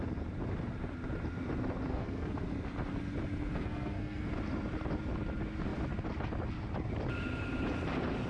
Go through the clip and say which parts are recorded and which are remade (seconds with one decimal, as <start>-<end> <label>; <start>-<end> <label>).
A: 0.0-1.9 recorded; 1.9-2.5 remade; 2.5-3.5 recorded; 3.5-4.3 remade; 4.3-8.3 recorded

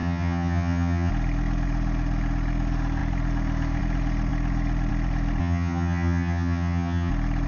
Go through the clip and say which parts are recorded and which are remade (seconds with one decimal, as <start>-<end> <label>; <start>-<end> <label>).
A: 0.0-1.1 remade; 1.1-5.4 recorded; 5.4-7.1 remade; 7.1-7.5 recorded

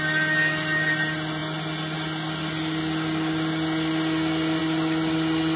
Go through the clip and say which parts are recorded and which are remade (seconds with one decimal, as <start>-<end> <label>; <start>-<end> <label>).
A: 0.0-5.6 recorded

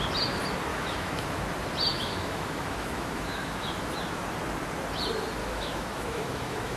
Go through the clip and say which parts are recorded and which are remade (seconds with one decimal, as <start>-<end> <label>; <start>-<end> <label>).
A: 0.0-0.7 recorded; 0.7-1.4 remade; 1.4-1.9 recorded; 1.9-3.9 remade; 3.9-5.4 recorded; 5.4-6.8 remade